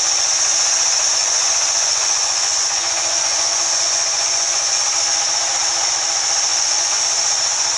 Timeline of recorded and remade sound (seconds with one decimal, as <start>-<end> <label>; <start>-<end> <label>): 0.0-1.2 recorded; 1.2-4.8 remade; 4.8-6.5 recorded; 6.5-7.0 remade; 7.0-7.8 recorded